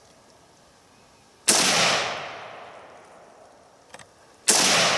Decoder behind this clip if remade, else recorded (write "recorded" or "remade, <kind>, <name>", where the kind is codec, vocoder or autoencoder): recorded